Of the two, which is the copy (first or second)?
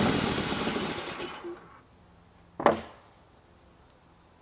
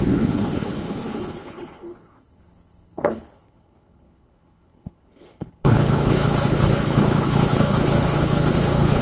second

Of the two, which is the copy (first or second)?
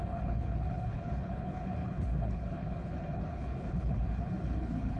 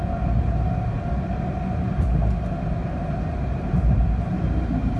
first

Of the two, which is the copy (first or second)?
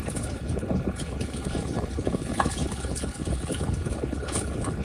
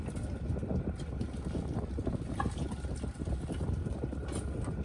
first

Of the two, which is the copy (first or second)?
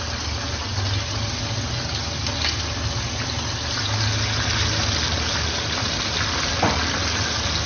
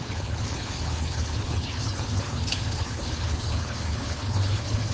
second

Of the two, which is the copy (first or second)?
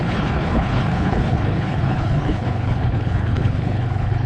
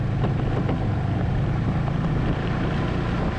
first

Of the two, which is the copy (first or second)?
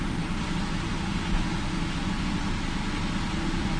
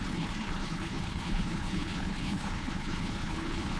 second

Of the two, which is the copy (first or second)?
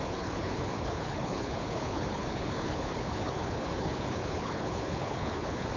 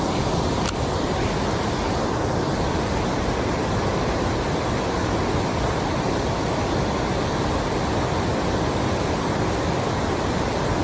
first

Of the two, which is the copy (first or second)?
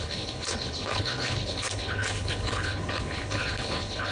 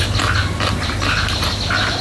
first